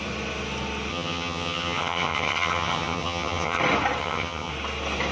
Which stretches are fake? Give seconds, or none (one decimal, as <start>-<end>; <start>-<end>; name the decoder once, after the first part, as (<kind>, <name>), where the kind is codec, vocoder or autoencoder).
0.9-3.6 (vocoder, HiFi-GAN); 4.0-4.5